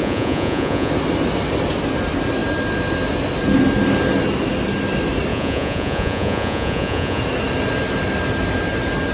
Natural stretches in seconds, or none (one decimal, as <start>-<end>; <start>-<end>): 0.9-5.3; 7.2-9.1